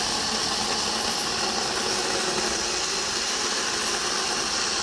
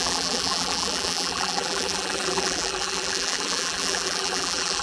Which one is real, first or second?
first